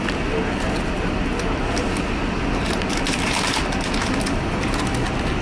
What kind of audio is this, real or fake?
real